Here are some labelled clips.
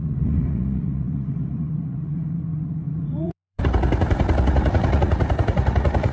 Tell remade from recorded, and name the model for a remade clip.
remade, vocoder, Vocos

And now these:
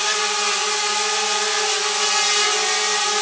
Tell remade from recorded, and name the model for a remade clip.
recorded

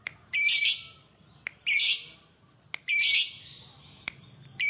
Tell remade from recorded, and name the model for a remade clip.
recorded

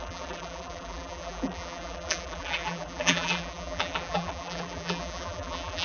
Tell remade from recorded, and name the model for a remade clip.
remade, vocoder, BigVGAN v2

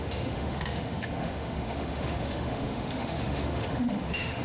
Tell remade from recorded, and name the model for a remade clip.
remade, autoencoder, DAC-VAE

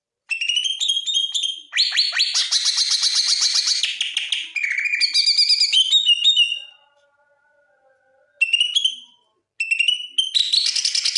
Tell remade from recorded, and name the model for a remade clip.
recorded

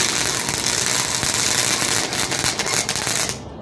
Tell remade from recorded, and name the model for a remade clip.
recorded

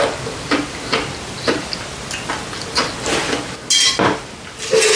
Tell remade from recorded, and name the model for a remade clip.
recorded